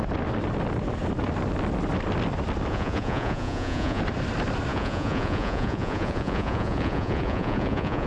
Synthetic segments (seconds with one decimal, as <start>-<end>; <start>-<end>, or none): 2.7-4.0; 4.7-8.1